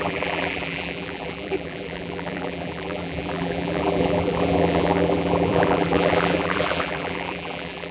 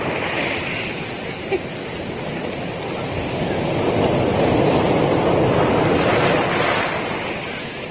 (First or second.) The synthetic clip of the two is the first